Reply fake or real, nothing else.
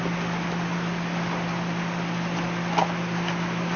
real